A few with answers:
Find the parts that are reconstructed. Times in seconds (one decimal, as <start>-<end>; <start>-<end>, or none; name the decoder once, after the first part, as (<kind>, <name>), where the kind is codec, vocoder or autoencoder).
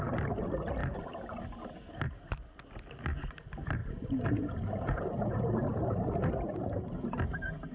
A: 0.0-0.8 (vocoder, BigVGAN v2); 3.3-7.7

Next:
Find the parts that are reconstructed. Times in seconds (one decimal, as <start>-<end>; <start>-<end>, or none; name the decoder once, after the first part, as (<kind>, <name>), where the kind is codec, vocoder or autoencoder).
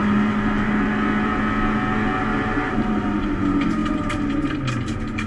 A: 0.0-0.9 (vocoder, BigVGAN v2); 2.3-2.9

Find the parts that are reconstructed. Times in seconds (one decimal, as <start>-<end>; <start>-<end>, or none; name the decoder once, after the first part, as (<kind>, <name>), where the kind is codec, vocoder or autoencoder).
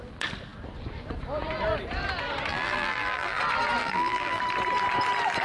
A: 2.5-3.4 (vocoder, BigVGAN v2); 3.8-4.4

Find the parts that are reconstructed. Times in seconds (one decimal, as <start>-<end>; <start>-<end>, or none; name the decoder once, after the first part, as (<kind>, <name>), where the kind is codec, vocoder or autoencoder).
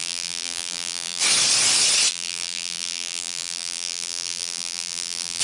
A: 0.0-1.2 (vocoder, BigVGAN v2); 2.1-5.4